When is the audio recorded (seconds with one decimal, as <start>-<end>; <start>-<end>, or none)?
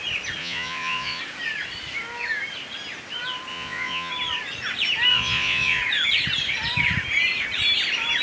0.0-0.4; 1.2-3.5; 4.1-5.1; 5.8-8.2